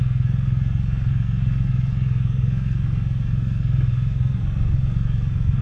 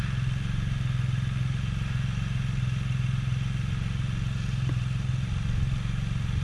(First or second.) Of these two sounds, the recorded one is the second